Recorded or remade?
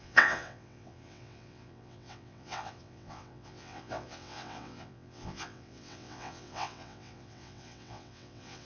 remade